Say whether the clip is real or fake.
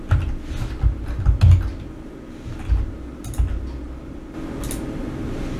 real